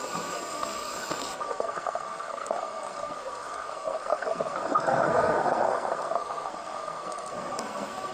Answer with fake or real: fake